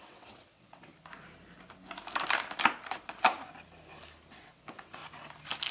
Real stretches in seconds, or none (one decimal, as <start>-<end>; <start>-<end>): 0.9-4.3; 5.0-5.7